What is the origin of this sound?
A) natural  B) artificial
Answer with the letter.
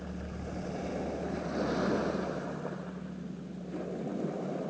A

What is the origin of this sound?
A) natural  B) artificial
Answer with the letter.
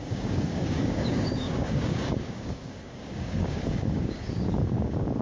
B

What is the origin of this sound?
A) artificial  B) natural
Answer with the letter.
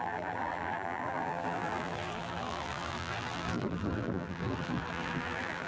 A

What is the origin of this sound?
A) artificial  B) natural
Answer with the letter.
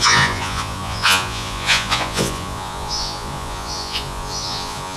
A